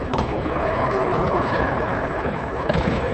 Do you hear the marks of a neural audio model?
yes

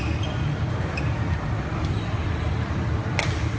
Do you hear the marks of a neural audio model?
no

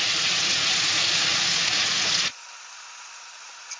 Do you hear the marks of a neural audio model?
yes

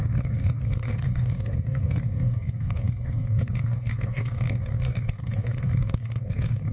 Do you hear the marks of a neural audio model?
yes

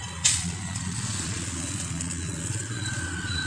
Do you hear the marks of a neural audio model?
yes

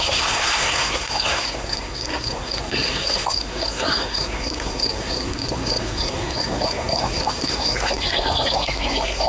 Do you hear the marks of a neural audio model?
yes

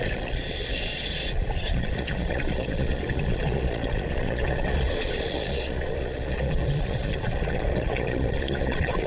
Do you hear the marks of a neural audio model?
yes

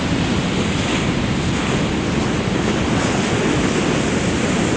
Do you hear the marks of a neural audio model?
no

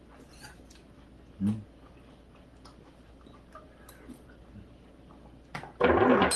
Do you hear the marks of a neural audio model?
no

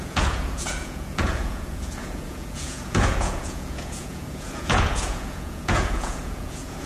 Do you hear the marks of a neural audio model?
yes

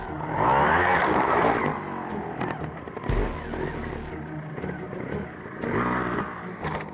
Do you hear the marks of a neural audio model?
no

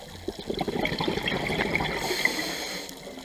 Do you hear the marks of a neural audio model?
no